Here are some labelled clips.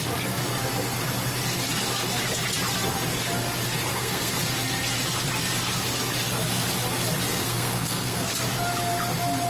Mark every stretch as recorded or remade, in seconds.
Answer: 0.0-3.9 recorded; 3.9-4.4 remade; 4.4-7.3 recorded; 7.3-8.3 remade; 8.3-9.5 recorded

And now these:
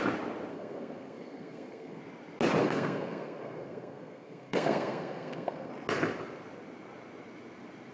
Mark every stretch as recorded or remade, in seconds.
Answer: 0.0-0.5 recorded; 0.5-2.0 remade; 2.0-2.6 recorded; 2.6-5.7 remade; 5.7-7.9 recorded

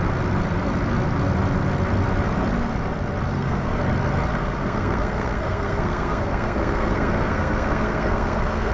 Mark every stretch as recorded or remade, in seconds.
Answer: 0.0-3.3 recorded; 3.3-3.8 remade; 3.8-4.3 recorded; 4.3-8.7 remade

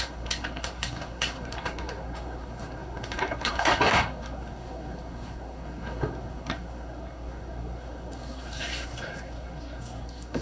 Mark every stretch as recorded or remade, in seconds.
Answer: 0.0-10.4 remade

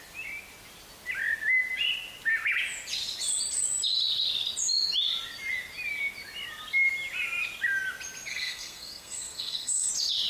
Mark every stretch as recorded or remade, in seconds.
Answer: 0.0-8.3 recorded; 8.3-9.9 remade; 9.9-10.3 recorded

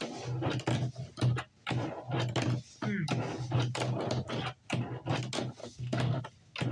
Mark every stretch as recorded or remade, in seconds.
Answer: 0.0-5.6 recorded; 5.6-6.2 remade; 6.2-6.7 recorded